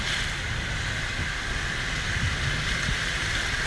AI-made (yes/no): no